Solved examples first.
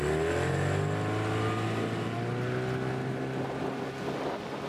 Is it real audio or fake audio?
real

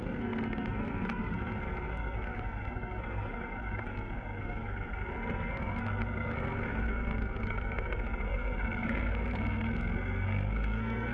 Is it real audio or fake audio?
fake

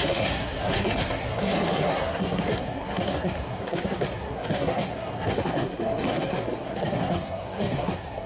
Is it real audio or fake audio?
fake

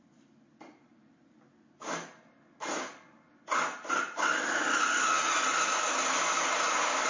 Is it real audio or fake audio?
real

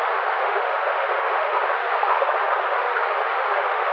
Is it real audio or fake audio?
fake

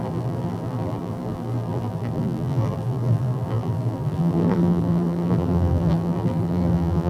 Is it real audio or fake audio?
fake